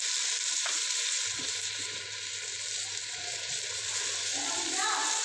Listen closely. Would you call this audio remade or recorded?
remade